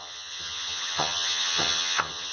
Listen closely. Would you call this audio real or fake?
fake